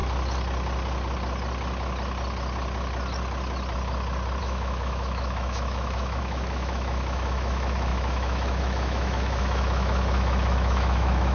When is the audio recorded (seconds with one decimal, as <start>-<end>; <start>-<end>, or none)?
0.0-4.4